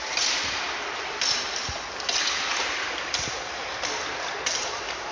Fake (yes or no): no